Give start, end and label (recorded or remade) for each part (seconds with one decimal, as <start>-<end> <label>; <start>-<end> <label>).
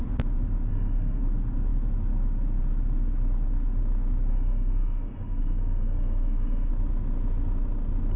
0.0-0.7 recorded; 0.7-1.2 remade; 1.2-4.3 recorded; 4.3-6.7 remade; 6.7-8.2 recorded